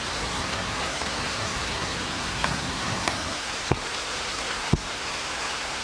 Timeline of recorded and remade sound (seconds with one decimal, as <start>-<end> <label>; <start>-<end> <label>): 0.0-5.8 remade